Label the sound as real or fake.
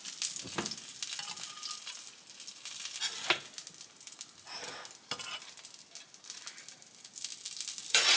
real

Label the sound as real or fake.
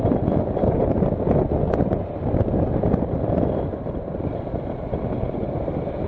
real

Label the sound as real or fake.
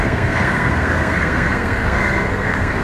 fake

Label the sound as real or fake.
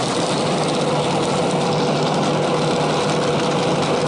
real